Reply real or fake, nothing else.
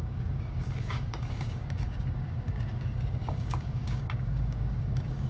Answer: fake